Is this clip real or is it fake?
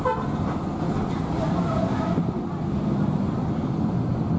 real